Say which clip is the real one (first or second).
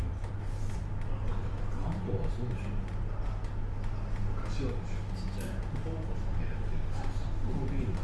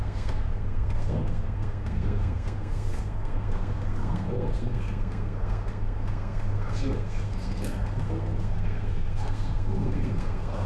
first